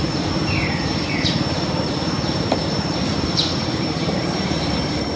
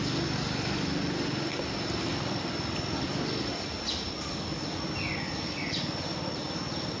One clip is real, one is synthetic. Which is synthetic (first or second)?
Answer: first